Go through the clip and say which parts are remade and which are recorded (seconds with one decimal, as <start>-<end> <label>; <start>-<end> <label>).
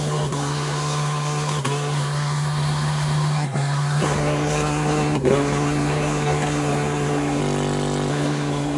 0.0-7.4 remade; 7.4-8.1 recorded; 8.1-8.8 remade